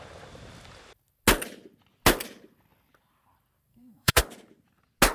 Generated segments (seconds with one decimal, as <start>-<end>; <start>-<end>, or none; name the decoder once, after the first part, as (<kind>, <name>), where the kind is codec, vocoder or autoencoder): 3.7-4.2 (codec, SNAC)